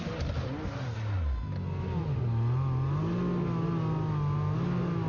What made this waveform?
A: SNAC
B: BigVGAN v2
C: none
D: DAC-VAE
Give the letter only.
C